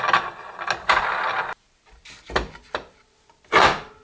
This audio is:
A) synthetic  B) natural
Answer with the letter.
B